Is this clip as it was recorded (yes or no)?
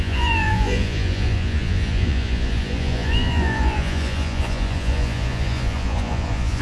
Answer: no